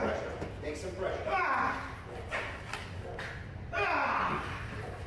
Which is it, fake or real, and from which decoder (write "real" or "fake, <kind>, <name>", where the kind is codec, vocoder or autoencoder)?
real